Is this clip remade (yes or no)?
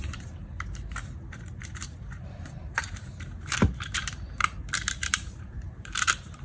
yes